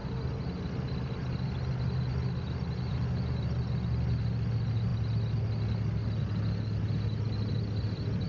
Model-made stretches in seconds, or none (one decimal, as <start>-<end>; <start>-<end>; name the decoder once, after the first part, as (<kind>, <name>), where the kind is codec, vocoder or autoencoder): none